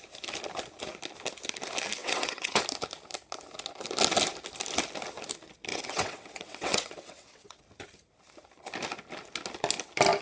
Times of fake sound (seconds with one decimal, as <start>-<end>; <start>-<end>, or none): 2.0-2.6; 5.7-7.6